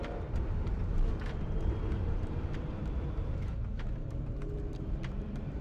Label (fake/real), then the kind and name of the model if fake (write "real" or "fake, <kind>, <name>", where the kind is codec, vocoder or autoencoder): fake, vocoder, BigVGAN v2